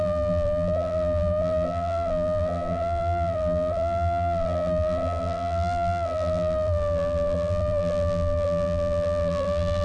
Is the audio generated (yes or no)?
yes